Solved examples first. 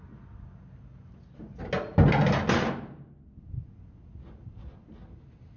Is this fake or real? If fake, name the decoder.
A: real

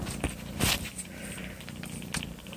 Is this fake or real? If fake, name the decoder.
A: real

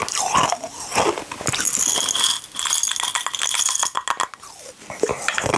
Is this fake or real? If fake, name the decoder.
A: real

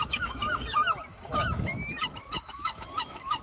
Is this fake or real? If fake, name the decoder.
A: fake, autoencoder, DAC-VAE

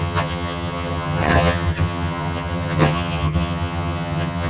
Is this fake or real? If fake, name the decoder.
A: fake, vocoder, HiFi-GAN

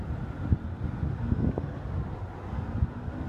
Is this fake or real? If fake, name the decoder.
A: real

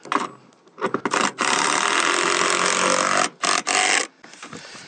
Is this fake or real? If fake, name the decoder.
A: real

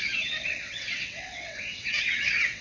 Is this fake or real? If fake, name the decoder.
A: fake, vocoder, WaveNeXt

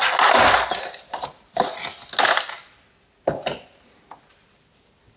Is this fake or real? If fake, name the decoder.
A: real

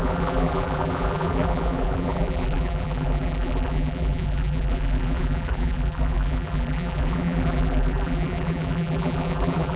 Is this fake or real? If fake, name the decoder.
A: fake, vocoder, BigVGAN v2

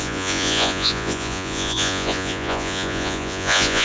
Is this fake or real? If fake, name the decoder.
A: fake, vocoder, Vocos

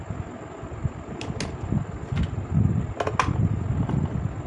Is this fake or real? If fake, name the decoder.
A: real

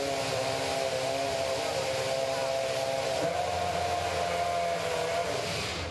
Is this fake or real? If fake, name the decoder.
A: real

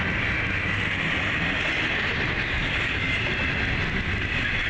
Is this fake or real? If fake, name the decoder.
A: real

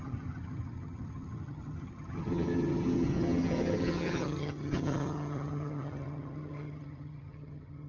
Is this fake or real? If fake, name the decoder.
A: fake, vocoder, HiFi-GAN